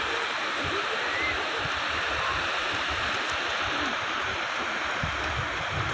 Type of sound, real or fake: fake